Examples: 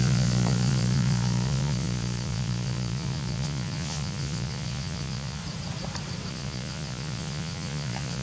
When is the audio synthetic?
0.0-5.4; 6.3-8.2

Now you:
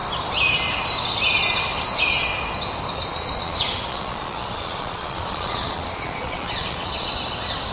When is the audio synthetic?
3.1-7.1

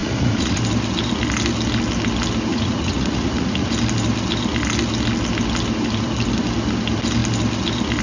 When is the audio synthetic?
0.0-0.6; 2.5-3.7